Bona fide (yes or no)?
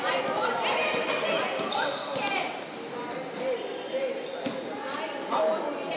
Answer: yes